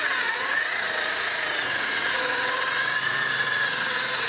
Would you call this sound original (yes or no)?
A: no